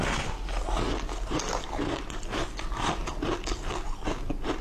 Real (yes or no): yes